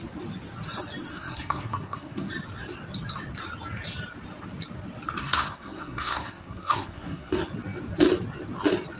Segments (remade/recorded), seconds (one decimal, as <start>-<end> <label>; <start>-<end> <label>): 0.0-1.1 recorded; 1.1-2.3 remade; 2.3-5.2 recorded; 5.2-7.3 remade; 7.3-9.0 recorded

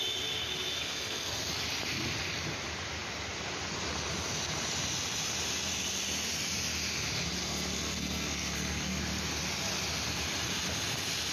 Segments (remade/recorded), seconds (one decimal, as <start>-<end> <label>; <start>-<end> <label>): 0.0-0.8 recorded; 0.8-1.4 remade; 1.4-7.4 recorded; 7.4-9.0 remade; 9.0-11.3 recorded

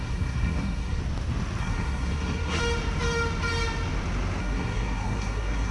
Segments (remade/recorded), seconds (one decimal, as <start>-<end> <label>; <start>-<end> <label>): 0.0-1.0 remade; 1.0-1.6 recorded; 1.6-2.6 remade; 2.6-4.4 recorded; 4.4-5.7 remade